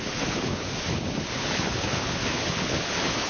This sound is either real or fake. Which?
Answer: fake